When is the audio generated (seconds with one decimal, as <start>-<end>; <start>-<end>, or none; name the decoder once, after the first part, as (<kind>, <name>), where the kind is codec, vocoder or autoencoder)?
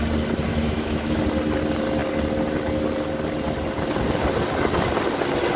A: 0.5-1.2 (autoencoder, DAC-VAE)